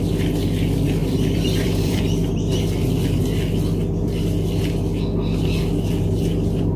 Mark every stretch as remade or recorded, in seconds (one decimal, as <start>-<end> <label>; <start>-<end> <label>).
0.0-1.0 recorded; 1.0-2.0 remade; 2.0-6.8 recorded